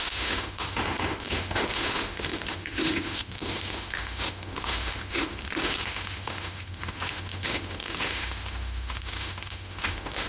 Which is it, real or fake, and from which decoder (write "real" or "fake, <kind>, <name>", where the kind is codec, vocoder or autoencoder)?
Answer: fake, autoencoder, DAC-VAE